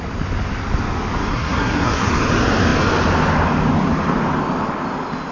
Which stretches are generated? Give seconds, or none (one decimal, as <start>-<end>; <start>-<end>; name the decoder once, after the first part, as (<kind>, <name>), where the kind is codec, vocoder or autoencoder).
1.3-2.1 (codec, SNAC)